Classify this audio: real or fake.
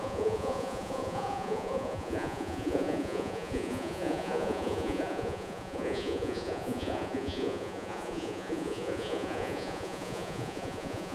fake